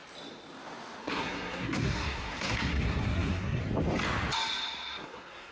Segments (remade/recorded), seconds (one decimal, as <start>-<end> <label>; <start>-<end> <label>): 0.0-1.0 recorded; 1.0-3.6 remade; 3.6-5.0 recorded; 5.0-5.5 remade

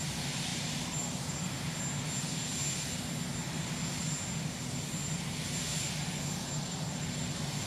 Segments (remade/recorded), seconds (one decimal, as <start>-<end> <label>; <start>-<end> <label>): 0.0-0.5 recorded; 0.5-1.8 remade; 1.8-7.7 recorded

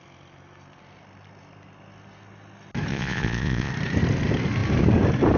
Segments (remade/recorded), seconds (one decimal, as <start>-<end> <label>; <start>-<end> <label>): 0.0-2.9 recorded; 2.9-3.7 remade; 3.7-5.4 recorded

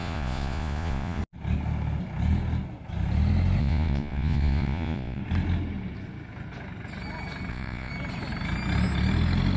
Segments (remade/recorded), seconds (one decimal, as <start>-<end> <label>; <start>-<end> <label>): 0.0-1.2 remade; 1.2-3.6 recorded; 3.6-5.2 remade; 5.2-7.5 recorded; 7.5-7.9 remade; 7.9-9.6 recorded

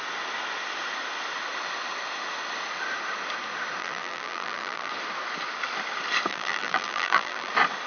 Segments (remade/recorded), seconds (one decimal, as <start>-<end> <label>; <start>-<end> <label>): 0.0-3.8 recorded; 3.8-4.9 remade; 4.9-6.3 recorded; 6.3-7.5 remade; 7.5-7.9 recorded